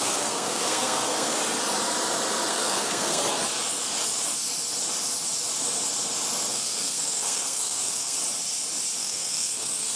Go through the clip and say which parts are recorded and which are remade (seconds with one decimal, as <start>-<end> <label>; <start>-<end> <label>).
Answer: 0.0-1.4 remade; 1.4-2.5 recorded; 2.5-3.2 remade; 3.2-6.5 recorded; 6.5-8.2 remade; 8.2-9.0 recorded; 9.0-10.0 remade